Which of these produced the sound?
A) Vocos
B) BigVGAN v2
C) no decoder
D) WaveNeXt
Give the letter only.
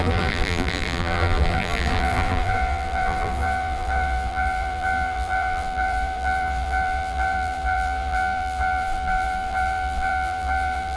B